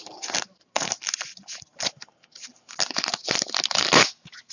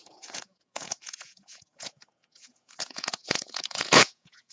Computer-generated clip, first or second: second